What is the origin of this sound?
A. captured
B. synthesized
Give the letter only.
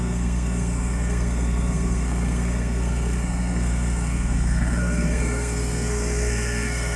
B